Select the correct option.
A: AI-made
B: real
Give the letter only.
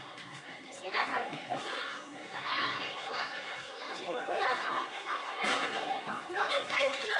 A